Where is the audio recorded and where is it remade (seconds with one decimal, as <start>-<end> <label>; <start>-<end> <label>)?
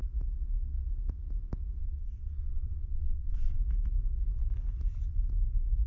0.0-1.8 recorded; 1.8-3.6 remade; 3.6-5.9 recorded